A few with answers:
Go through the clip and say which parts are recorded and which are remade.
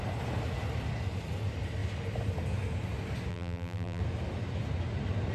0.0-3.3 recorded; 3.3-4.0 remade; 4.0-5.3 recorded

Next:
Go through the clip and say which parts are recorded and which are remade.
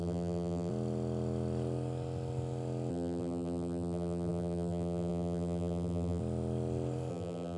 0.0-0.7 remade; 0.7-2.9 recorded; 2.9-6.2 remade; 6.2-7.1 recorded; 7.1-7.6 remade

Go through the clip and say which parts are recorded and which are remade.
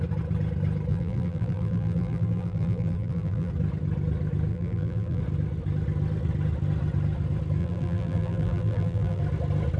0.0-0.9 recorded; 0.9-3.5 remade; 3.5-4.5 recorded; 4.5-5.2 remade; 5.2-7.6 recorded; 7.6-9.2 remade; 9.2-9.8 recorded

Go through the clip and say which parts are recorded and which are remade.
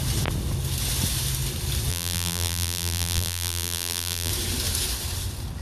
0.0-1.9 recorded; 1.9-4.3 remade; 4.3-5.6 recorded